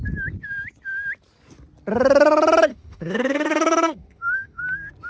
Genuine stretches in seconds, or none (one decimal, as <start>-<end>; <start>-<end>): 0.0-2.7; 4.6-5.1